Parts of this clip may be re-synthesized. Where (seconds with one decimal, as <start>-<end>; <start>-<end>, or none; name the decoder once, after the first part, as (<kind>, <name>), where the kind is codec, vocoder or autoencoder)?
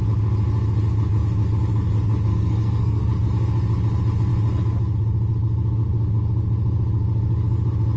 2.3-3.3 (codec, SNAC)